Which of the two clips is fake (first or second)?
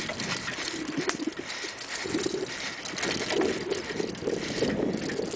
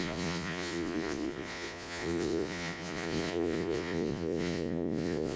second